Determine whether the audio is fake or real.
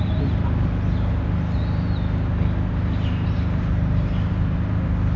real